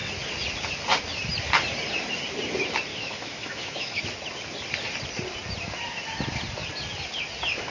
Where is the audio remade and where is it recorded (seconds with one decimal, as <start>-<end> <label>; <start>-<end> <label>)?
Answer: 0.0-2.9 recorded; 2.9-4.0 remade; 4.0-7.7 recorded